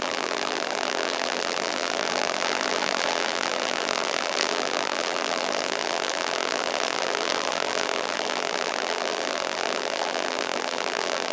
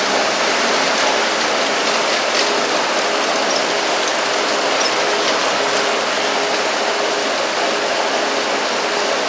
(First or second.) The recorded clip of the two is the second